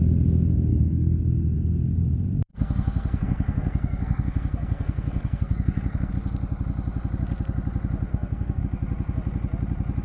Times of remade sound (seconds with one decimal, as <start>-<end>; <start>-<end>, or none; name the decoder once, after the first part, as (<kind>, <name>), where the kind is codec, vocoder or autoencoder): 0.7-1.2 (codec, SNAC); 2.5-6.1; 8.1-8.6